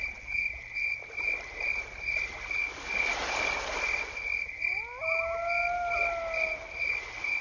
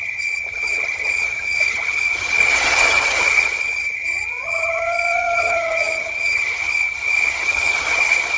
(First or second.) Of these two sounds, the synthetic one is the second